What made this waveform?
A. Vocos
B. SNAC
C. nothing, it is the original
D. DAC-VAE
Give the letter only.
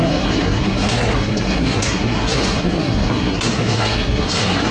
B